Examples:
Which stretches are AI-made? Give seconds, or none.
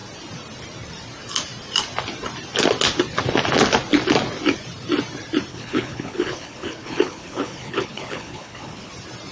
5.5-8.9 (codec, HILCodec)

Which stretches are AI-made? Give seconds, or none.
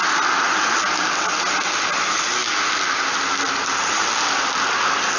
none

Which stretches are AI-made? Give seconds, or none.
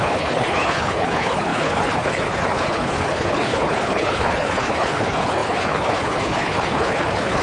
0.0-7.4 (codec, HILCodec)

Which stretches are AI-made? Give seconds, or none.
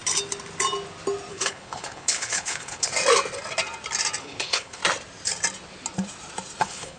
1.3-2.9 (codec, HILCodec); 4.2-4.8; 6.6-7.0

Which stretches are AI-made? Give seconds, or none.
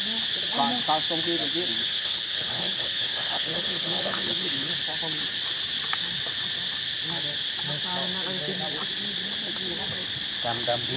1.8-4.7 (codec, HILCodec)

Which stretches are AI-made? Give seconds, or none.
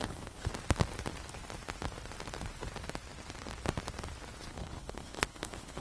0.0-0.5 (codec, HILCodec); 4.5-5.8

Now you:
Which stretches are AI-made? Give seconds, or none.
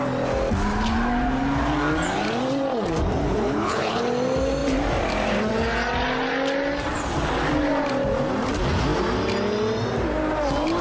3.2-4.0 (codec, HILCodec)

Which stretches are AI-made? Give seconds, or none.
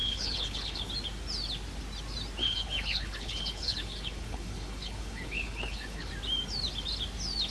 0.0-0.9 (codec, HILCodec); 2.4-6.1